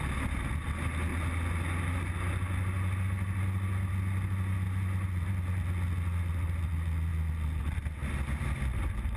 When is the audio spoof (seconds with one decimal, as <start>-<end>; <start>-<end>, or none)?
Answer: none